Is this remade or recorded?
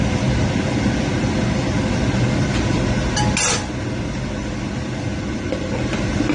recorded